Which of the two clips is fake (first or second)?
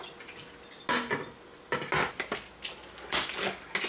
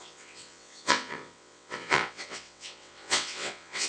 second